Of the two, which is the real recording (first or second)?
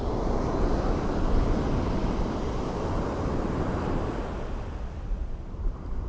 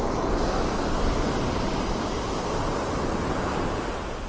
second